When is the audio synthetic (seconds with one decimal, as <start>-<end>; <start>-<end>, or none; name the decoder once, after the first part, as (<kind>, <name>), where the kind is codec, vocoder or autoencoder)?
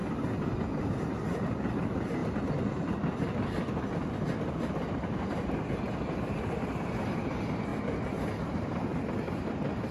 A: none